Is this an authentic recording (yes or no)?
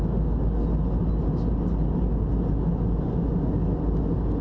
yes